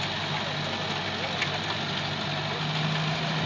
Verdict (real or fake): real